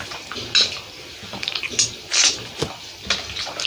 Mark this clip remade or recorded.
recorded